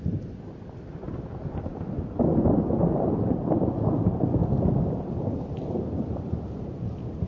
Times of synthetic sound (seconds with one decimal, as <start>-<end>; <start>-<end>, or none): 0.0-7.3